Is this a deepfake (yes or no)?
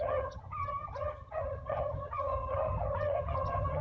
yes